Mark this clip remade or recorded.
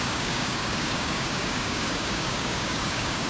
remade